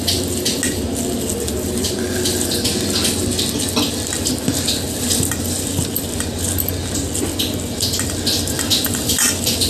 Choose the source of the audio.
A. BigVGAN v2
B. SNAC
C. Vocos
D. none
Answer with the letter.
D